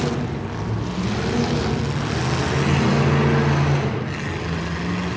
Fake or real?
real